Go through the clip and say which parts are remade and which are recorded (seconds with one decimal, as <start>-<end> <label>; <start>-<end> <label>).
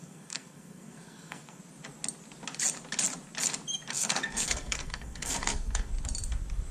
0.0-1.6 remade; 1.6-3.9 recorded; 3.9-5.9 remade; 5.9-6.7 recorded